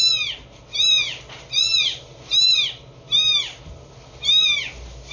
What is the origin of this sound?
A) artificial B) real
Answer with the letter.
B